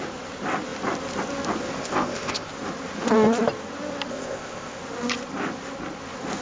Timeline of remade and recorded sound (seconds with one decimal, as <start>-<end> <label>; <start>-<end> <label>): 0.0-1.8 recorded; 1.8-2.5 remade; 2.5-4.1 recorded; 4.1-4.8 remade; 4.8-6.4 recorded